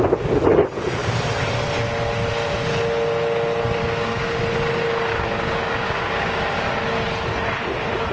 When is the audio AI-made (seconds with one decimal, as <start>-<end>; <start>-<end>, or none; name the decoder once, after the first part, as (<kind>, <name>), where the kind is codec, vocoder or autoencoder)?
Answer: 3.8-4.4 (codec, DAC); 5.1-6.4